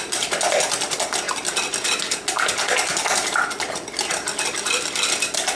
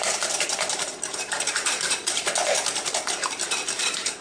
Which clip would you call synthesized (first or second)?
second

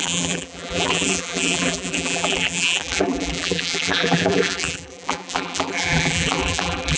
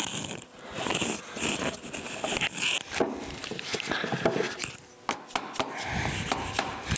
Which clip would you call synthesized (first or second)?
first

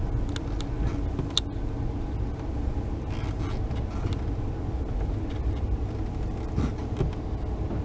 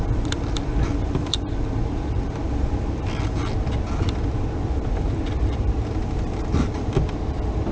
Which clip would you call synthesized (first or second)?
second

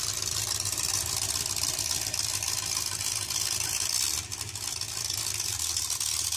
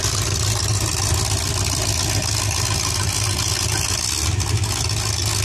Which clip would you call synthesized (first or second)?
first